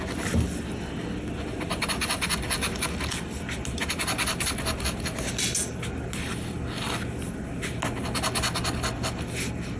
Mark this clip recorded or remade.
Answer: recorded